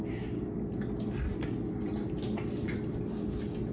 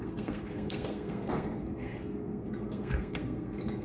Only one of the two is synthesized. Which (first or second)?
second